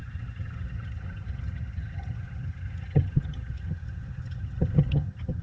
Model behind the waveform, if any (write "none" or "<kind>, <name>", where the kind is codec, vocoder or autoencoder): vocoder, HiFi-GAN